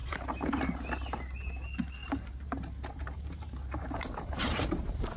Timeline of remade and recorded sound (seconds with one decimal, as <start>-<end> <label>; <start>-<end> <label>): 0.0-0.6 remade; 0.6-2.0 recorded; 2.0-5.2 remade